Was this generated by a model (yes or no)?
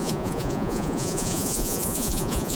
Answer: yes